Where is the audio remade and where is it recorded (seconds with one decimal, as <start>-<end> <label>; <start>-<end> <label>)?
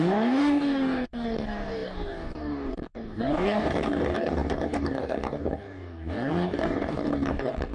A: 0.0-7.7 remade